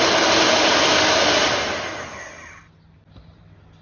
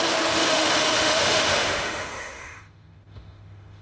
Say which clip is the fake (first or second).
second